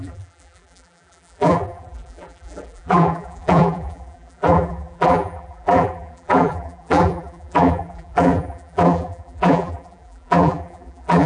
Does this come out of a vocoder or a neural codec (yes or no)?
yes